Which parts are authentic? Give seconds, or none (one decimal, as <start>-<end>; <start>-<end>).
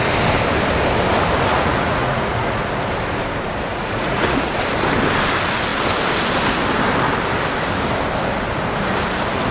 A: 0.0-1.5; 2.6-3.7; 4.6-9.5